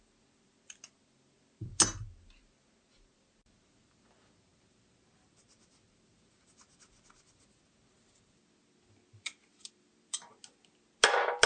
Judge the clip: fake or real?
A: real